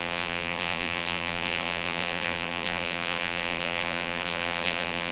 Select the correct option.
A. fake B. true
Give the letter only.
A